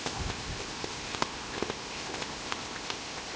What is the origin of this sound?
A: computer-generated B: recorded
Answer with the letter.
A